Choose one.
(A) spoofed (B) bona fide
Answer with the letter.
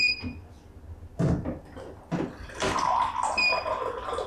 B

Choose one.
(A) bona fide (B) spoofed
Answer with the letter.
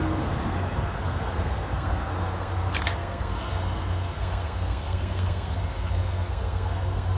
B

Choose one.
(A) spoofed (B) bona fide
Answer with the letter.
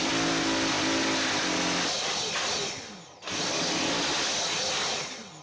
B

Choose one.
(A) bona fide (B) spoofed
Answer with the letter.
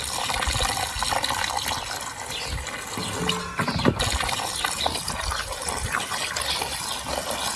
A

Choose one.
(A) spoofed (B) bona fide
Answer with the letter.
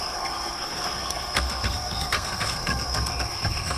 A